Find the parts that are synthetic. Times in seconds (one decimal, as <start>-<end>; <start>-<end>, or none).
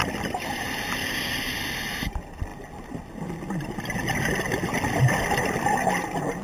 0.0-2.5; 4.4-6.4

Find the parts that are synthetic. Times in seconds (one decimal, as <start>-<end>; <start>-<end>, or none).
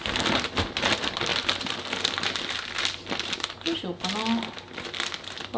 1.3-3.8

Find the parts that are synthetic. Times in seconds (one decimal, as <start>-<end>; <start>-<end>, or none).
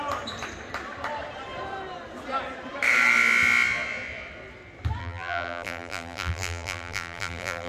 5.0-7.7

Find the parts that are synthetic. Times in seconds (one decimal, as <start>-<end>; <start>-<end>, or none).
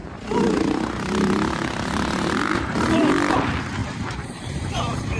0.0-3.1; 3.8-5.2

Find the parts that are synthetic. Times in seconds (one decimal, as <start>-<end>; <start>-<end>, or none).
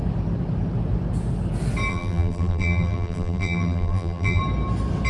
1.9-4.4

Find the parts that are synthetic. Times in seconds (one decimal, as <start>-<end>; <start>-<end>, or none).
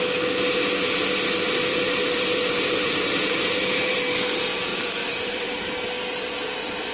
1.7-4.0; 4.7-5.7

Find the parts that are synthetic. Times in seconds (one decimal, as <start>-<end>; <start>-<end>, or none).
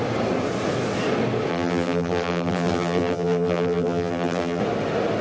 1.5-4.6